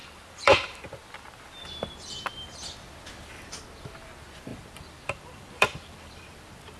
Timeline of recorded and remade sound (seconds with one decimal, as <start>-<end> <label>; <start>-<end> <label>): 0.0-0.8 remade; 0.8-4.5 recorded; 4.5-6.3 remade; 6.3-6.8 recorded

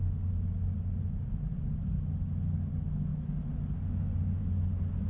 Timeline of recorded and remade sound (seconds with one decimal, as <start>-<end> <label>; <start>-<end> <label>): 0.0-5.1 recorded

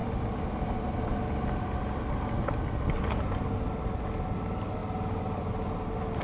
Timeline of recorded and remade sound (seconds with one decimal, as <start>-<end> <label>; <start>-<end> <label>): 0.0-6.2 recorded

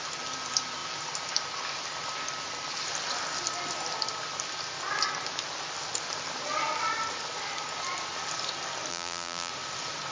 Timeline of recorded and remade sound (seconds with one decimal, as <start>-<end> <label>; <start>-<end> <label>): 0.0-8.9 recorded; 8.9-9.5 remade; 9.5-10.1 recorded

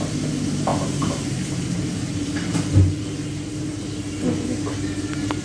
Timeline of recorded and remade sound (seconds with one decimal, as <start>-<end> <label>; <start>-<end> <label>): 0.0-0.7 recorded; 0.7-2.6 remade; 2.6-5.4 recorded

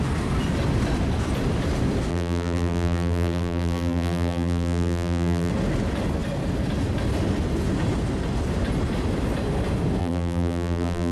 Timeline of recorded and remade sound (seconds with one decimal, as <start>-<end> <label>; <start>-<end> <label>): 0.0-2.1 recorded; 2.1-5.5 remade; 5.5-10.0 recorded; 10.0-11.1 remade